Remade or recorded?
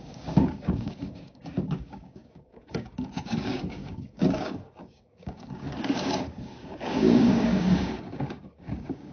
remade